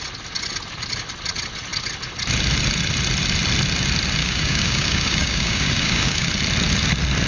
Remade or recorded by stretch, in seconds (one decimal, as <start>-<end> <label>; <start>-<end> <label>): 0.0-4.2 recorded; 4.2-6.3 remade; 6.3-7.3 recorded